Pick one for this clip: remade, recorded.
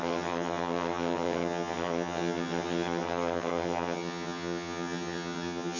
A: remade